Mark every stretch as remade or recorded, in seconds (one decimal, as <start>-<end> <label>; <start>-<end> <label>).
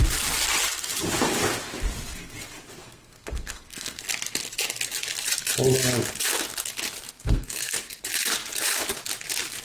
0.0-2.8 recorded; 2.8-4.0 remade; 4.0-7.1 recorded; 7.1-8.0 remade; 8.0-9.6 recorded